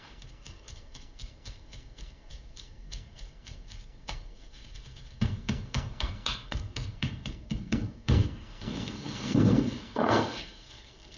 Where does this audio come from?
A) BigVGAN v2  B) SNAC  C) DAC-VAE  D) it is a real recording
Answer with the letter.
B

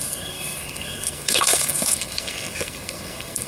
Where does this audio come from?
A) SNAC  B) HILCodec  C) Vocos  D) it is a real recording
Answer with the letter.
A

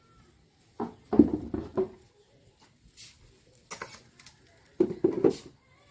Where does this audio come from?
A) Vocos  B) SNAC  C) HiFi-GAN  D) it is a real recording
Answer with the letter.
D